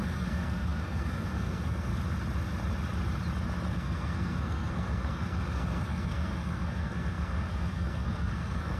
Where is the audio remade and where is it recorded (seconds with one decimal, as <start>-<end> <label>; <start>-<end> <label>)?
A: 0.0-1.9 remade; 1.9-3.7 recorded; 3.7-8.8 remade